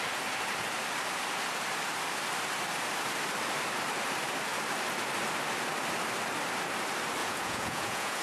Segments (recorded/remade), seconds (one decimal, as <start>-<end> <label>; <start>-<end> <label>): 0.0-7.2 recorded; 7.2-8.2 remade